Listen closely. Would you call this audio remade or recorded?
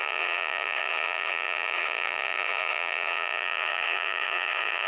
remade